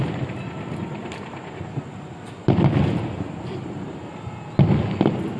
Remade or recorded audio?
recorded